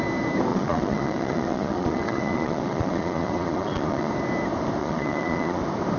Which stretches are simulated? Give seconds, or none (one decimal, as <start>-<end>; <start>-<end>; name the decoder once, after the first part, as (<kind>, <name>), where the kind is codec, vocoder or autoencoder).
0.5-4.1 (vocoder, Vocos); 4.8-5.6

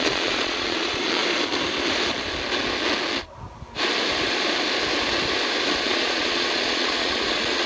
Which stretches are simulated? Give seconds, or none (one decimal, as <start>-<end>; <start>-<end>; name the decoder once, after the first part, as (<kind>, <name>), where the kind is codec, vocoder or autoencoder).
0.0-1.2 (vocoder, Vocos); 5.8-7.7

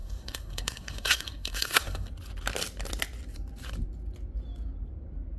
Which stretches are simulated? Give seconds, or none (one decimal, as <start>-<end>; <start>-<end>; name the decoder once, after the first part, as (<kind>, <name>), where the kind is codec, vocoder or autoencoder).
0.0-2.1 (codec, SNAC)

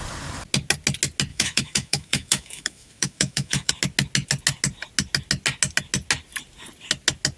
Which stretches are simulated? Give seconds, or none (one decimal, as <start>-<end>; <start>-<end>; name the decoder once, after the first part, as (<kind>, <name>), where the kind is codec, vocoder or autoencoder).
1.3-3.7 (autoencoder, DAC-VAE)

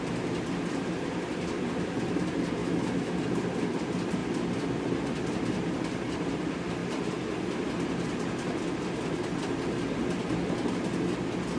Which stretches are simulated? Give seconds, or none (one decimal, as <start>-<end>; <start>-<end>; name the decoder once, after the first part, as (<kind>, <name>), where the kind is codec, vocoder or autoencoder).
2.6-3.2 (autoencoder, DAC-VAE)

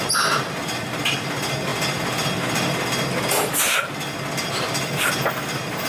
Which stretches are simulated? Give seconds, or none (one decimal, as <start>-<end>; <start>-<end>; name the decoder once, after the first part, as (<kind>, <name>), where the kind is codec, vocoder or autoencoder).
none

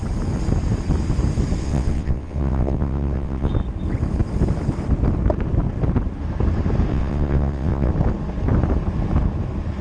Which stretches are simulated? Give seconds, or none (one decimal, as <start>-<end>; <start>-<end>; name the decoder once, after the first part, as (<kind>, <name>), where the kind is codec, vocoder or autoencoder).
1.6-3.5 (vocoder, WaveNeXt); 6.9-7.9

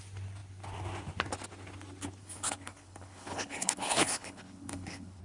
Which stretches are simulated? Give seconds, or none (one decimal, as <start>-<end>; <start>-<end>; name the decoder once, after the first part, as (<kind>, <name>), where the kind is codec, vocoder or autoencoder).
2.2-5.2 (codec, HILCodec)